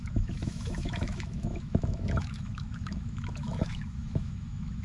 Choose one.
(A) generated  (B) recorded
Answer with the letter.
A